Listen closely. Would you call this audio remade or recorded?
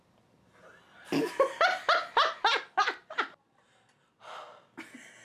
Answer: recorded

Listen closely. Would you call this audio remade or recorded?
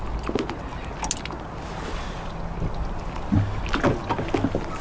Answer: recorded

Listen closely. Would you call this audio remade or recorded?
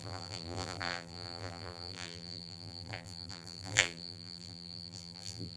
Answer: remade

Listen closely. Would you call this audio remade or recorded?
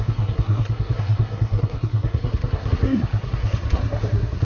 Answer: remade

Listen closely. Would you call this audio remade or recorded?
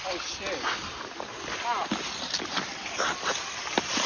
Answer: recorded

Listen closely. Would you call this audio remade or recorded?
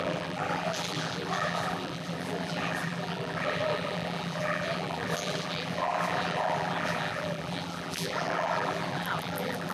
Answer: remade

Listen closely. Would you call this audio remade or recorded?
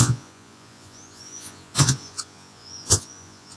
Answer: remade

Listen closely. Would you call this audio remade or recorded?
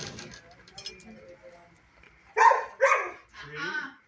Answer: recorded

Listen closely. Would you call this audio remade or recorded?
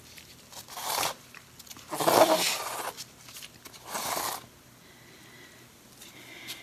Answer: recorded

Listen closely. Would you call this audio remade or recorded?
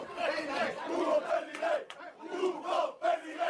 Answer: remade